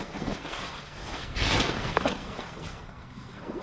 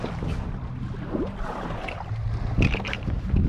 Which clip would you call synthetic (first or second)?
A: first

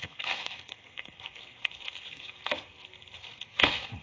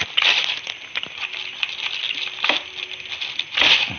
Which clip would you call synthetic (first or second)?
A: first